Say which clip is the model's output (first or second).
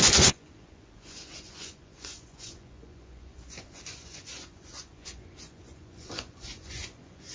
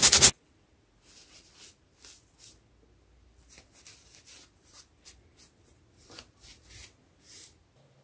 first